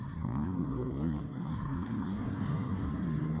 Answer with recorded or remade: remade